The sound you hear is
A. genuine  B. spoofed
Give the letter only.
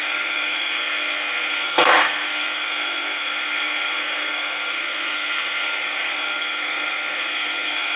B